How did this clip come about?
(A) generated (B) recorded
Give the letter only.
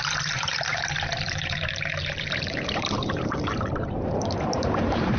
A